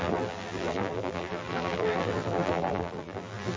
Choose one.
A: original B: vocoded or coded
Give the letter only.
B